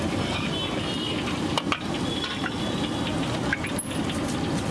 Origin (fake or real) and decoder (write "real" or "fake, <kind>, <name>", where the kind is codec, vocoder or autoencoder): real